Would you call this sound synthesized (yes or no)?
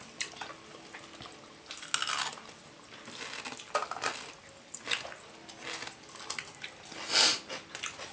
no